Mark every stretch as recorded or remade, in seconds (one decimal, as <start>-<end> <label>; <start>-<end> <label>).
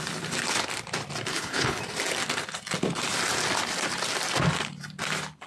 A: 0.0-1.3 recorded; 1.3-1.8 remade; 1.8-5.5 recorded